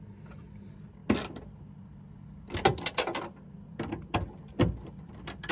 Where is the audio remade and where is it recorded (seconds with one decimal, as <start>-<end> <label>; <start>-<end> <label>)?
0.0-5.5 recorded